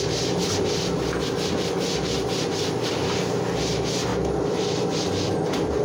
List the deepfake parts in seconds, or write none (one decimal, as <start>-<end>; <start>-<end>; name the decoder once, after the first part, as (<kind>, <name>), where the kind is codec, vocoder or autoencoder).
4.1-5.8 (vocoder, BigVGAN v2)